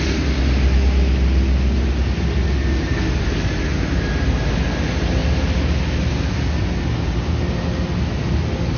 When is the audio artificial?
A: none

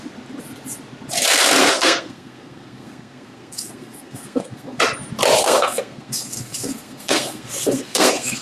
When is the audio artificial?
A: 1.6-4.8; 5.4-8.4

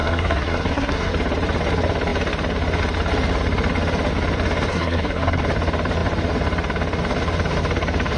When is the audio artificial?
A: 0.0-1.1; 4.7-5.4

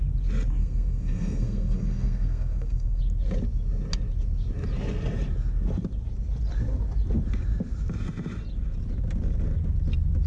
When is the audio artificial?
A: 0.6-3.0

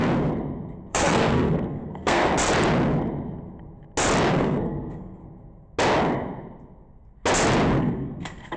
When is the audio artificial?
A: 0.9-2.3; 4.3-5.2; 7.8-8.6

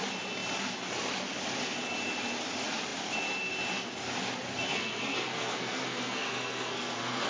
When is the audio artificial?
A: 4.7-7.3